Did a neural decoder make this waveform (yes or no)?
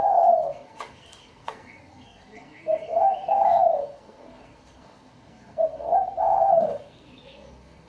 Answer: yes